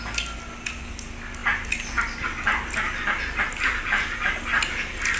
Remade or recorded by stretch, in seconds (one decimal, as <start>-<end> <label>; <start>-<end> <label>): 0.0-5.2 recorded